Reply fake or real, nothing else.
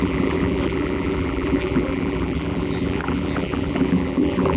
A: fake